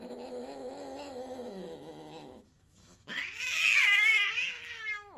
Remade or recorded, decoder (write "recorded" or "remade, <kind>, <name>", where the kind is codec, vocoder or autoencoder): remade, autoencoder, DAC-VAE